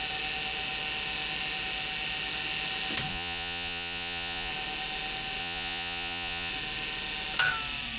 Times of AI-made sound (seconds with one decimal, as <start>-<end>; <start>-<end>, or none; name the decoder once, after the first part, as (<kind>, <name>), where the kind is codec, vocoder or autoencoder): 3.1-4.5 (vocoder, Vocos); 5.4-6.5